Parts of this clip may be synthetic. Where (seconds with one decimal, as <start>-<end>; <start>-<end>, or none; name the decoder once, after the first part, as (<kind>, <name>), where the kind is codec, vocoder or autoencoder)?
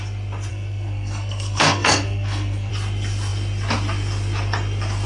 0.5-2.7 (codec, SNAC)